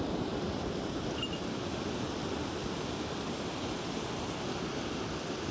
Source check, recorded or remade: recorded